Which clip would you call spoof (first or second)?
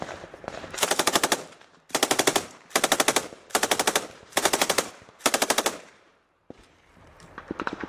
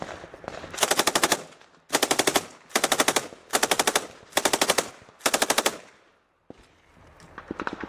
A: first